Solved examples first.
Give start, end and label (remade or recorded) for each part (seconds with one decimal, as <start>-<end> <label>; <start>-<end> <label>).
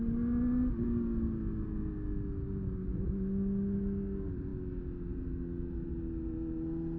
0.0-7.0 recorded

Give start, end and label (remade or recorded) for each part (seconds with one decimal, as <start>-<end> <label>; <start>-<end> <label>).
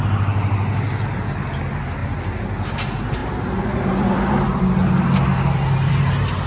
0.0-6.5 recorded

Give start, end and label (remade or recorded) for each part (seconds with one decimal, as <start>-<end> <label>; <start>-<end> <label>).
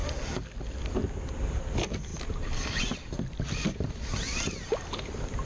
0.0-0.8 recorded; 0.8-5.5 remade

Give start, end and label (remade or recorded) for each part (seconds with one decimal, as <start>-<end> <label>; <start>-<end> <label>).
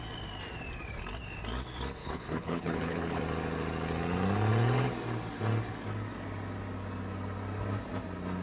0.0-2.0 recorded; 2.0-3.2 remade; 3.2-8.4 recorded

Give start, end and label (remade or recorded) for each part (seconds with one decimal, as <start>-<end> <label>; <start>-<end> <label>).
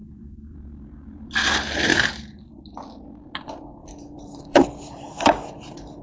0.0-1.5 remade; 1.5-1.9 recorded; 1.9-2.6 remade; 2.6-3.8 recorded; 3.8-6.0 remade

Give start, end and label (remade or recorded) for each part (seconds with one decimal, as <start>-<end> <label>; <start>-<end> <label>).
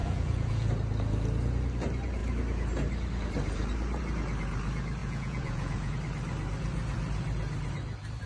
0.0-0.7 remade; 0.7-5.0 recorded; 5.0-5.9 remade; 5.9-8.3 recorded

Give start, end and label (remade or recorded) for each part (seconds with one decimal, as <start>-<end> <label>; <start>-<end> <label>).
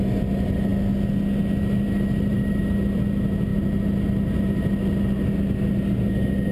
0.0-6.5 recorded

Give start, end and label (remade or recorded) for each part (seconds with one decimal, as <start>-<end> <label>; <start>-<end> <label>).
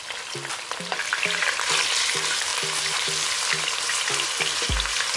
0.0-5.2 recorded